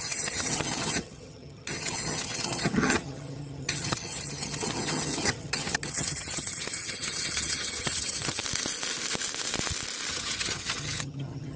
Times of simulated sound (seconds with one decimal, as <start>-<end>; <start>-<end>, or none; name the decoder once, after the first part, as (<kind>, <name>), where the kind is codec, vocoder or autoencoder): 0.0-8.4 (vocoder, HiFi-GAN); 10.1-11.6

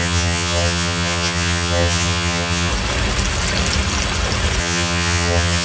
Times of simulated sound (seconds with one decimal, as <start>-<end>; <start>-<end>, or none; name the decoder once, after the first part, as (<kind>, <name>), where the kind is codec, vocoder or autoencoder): 0.0-2.7 (vocoder, HiFi-GAN); 4.6-5.6